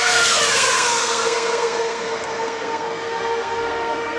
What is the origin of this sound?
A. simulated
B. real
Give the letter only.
A